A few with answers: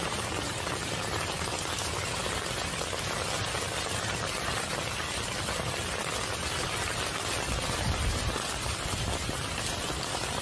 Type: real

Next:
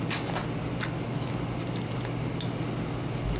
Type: real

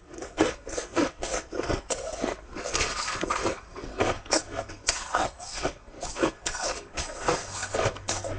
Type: fake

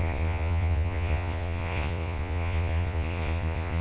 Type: fake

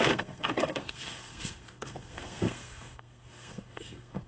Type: fake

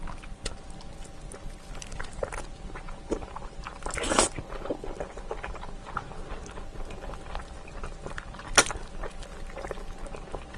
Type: real